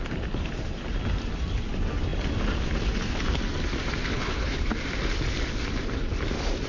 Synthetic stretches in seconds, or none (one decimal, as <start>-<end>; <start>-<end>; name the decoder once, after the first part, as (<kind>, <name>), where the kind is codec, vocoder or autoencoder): 4.1-4.7 (codec, HILCodec)